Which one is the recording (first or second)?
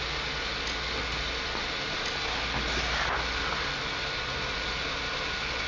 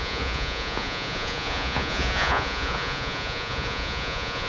first